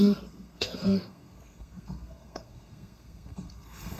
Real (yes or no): no